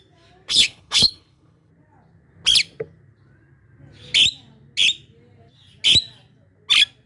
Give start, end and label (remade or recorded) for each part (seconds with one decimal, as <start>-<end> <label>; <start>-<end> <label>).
0.0-0.5 recorded; 0.5-1.7 remade; 1.7-7.1 recorded